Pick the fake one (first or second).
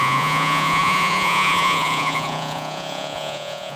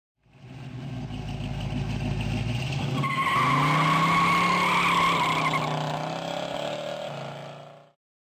first